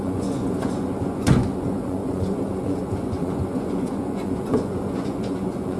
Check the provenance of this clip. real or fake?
fake